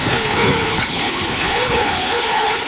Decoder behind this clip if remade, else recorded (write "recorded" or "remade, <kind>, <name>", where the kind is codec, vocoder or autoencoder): remade, codec, HILCodec